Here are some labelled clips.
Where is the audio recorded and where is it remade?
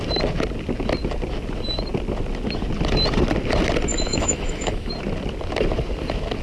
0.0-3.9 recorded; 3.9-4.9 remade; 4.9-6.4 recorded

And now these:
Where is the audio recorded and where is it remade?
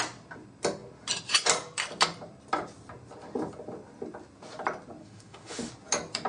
0.0-5.0 recorded; 5.0-5.7 remade; 5.7-6.3 recorded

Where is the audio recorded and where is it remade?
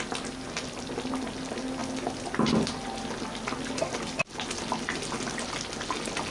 0.0-6.3 recorded